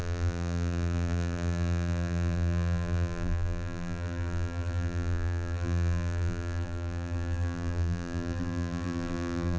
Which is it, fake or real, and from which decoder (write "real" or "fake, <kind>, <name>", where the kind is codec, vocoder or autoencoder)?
fake, vocoder, BigVGAN v2